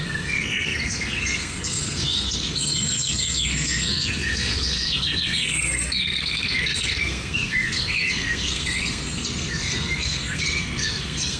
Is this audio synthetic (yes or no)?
yes